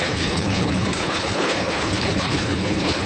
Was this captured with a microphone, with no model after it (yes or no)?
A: no